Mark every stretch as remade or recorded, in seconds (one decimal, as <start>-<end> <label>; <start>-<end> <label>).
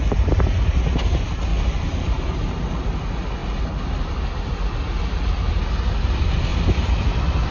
0.0-1.5 recorded; 1.5-2.1 remade; 2.1-6.5 recorded; 6.5-7.5 remade